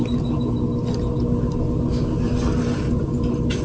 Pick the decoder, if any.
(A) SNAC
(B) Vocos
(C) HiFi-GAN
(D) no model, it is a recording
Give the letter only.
D